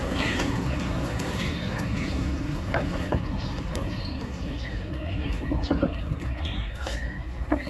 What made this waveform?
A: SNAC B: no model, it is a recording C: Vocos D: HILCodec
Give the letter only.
A